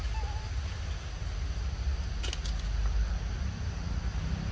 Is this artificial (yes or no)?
no